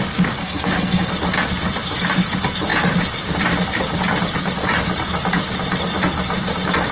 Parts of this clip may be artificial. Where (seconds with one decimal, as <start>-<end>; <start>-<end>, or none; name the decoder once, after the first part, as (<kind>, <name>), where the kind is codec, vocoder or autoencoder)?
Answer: 0.4-1.1 (codec, SNAC)